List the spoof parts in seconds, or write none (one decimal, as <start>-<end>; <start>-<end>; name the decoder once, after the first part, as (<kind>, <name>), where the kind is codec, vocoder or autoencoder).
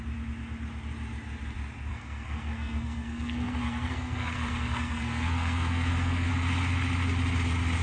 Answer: 1.9-6.3 (codec, SNAC)